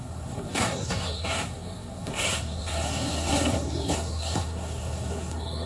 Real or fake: fake